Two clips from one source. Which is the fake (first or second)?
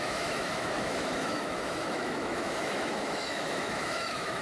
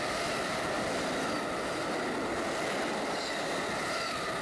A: first